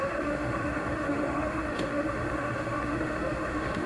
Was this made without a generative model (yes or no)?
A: no